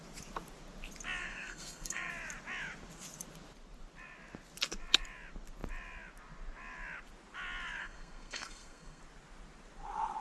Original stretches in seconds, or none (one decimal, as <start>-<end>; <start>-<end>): 0.0-1.2; 2.1-7.8; 9.0-10.2